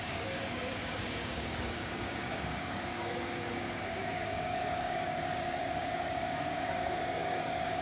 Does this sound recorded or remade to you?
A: remade